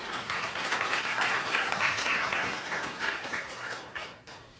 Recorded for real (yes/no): no